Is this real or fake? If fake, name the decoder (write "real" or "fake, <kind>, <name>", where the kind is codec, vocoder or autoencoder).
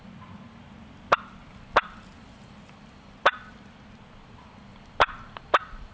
real